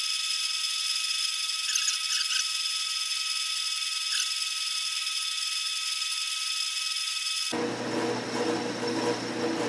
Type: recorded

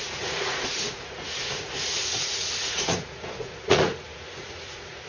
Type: remade